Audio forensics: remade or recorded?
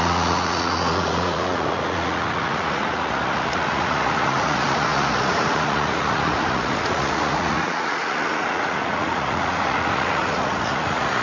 remade